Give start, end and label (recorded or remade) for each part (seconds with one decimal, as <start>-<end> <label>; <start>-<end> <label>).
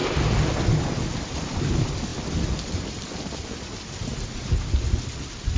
0.0-5.6 recorded